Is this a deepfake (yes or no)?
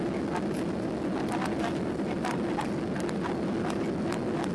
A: no